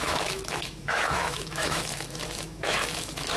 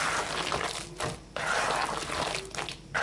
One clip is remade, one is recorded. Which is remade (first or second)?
first